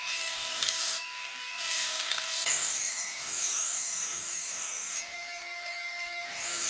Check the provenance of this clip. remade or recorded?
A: remade